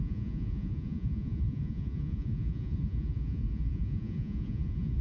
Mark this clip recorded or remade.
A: remade